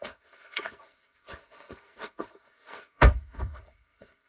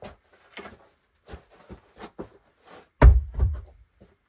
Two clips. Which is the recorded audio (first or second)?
second